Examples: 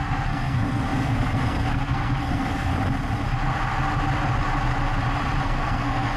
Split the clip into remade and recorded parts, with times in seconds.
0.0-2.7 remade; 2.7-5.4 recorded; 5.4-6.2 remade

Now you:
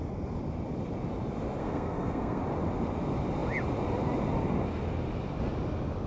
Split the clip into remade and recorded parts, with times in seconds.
0.0-1.6 recorded; 1.6-2.4 remade; 2.4-6.1 recorded

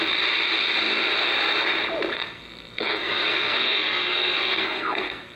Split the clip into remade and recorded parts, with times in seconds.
0.0-2.1 recorded; 2.1-5.4 remade

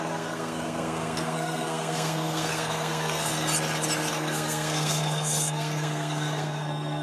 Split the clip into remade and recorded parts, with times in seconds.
0.0-3.3 remade; 3.3-4.1 recorded; 4.1-7.0 remade

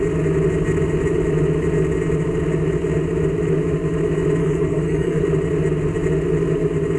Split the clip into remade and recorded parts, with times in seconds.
0.0-4.4 recorded; 4.4-5.2 remade; 5.2-7.0 recorded

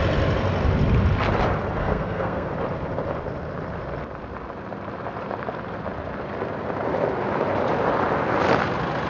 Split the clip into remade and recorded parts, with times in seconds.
0.0-1.8 recorded; 1.8-2.5 remade; 2.5-9.1 recorded

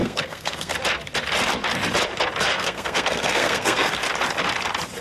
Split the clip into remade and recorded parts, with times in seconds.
0.0-0.7 remade; 0.7-2.5 recorded; 2.5-3.9 remade; 3.9-5.0 recorded

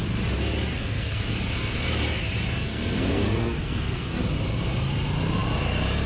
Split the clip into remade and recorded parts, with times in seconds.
0.0-0.7 recorded; 0.7-1.3 remade; 1.3-2.7 recorded; 2.7-4.2 remade; 4.2-6.1 recorded